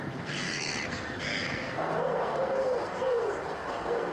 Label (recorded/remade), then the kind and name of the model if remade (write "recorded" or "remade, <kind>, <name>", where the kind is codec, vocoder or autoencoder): remade, codec, SNAC